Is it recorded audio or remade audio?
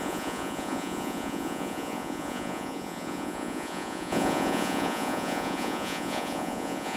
remade